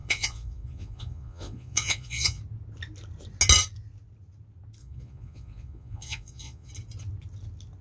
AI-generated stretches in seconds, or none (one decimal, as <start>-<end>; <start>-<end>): 0.0-2.4; 4.8-6.7